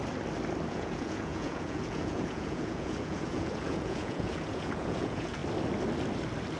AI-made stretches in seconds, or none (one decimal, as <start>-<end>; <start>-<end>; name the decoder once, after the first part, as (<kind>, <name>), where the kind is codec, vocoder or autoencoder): 0.7-5.4 (vocoder, Vocos)